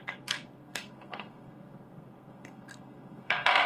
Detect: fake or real fake